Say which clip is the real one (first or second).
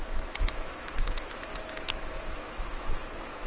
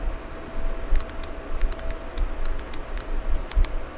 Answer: second